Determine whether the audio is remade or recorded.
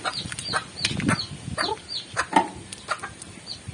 recorded